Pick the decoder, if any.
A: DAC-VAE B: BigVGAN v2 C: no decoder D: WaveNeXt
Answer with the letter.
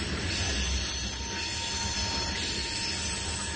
C